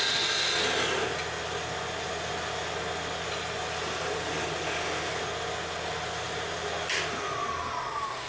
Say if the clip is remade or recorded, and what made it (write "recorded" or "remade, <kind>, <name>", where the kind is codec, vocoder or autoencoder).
recorded